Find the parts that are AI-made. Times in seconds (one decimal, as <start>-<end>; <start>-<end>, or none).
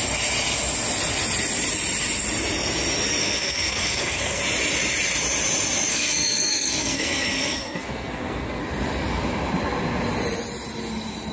3.2-4.4; 5.9-8.6